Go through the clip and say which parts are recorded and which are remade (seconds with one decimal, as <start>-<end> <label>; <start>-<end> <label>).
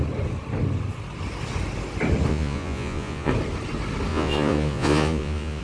0.0-2.3 recorded; 2.3-3.3 remade; 3.3-4.1 recorded; 4.1-5.6 remade